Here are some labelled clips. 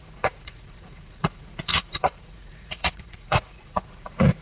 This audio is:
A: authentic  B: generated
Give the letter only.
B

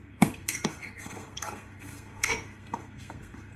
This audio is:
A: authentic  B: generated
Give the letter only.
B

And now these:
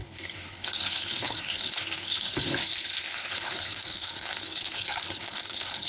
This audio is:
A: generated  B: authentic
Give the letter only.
A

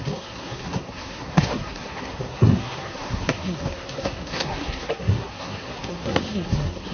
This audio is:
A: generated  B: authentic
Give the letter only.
A